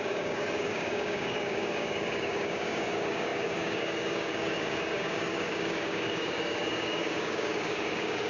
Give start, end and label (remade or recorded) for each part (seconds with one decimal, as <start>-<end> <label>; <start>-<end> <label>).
0.0-8.3 remade